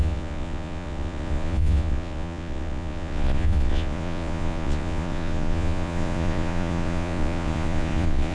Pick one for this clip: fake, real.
fake